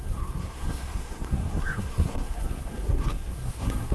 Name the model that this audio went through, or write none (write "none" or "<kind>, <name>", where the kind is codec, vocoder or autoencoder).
codec, SNAC